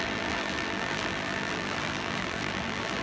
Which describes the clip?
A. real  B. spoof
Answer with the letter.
B